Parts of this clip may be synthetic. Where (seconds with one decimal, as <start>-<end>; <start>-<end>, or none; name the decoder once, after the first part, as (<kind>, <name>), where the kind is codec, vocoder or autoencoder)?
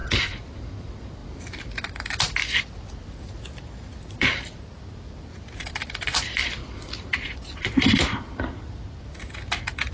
0.0-9.9 (vocoder, BigVGAN v2)